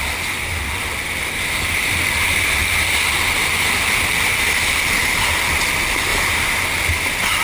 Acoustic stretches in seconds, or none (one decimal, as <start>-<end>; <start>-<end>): 0.0-7.4